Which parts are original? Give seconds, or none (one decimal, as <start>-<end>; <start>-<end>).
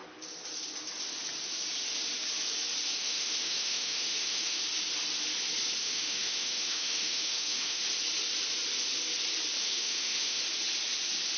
0.0-3.0; 4.6-5.8; 7.8-9.6; 10.4-11.4